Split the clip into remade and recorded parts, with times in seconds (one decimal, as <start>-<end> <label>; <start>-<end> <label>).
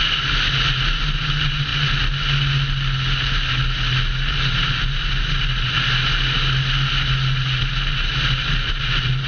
0.0-9.3 recorded